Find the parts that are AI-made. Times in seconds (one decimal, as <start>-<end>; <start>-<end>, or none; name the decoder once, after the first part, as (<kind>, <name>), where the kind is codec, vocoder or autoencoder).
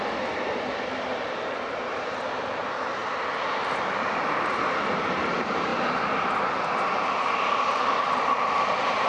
0.0-3.0 (vocoder, BigVGAN v2); 4.6-5.7; 7.0-9.1